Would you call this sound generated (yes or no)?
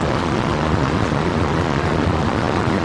yes